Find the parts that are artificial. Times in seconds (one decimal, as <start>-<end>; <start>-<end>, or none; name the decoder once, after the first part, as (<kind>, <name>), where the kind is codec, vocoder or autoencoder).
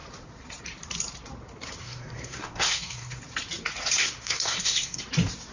1.8-3.2 (codec, SNAC); 4.0-5.0